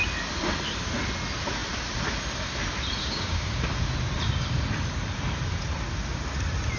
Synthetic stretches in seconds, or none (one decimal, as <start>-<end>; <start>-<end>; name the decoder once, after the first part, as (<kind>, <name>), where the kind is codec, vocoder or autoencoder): 3.0-3.5 (codec, DAC)